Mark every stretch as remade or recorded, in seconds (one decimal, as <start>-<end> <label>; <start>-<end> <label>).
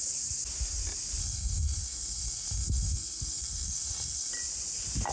0.0-1.2 recorded; 1.2-4.3 remade; 4.3-5.1 recorded